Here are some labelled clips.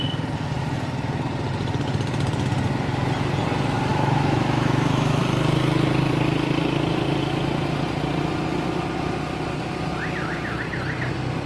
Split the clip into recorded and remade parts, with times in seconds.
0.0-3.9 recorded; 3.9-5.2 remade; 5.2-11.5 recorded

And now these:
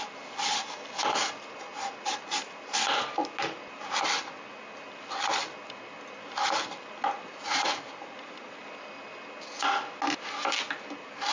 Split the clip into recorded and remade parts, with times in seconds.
0.0-7.3 recorded; 7.3-8.6 remade; 8.6-11.3 recorded